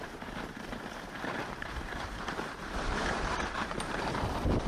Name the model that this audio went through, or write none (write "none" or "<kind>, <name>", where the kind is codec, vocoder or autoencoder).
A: vocoder, BigVGAN v2